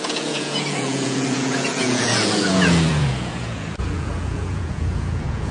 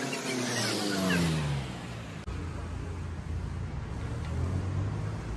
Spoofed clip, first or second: first